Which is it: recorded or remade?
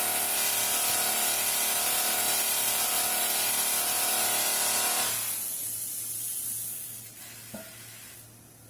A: recorded